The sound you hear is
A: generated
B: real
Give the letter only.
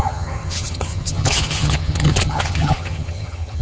A